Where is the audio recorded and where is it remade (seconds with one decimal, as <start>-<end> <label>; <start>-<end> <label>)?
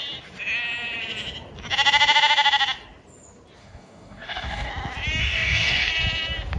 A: 0.0-3.6 recorded; 3.6-4.7 remade; 4.7-5.2 recorded; 5.2-5.9 remade; 5.9-6.6 recorded